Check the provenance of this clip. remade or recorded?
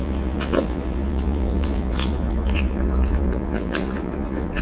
remade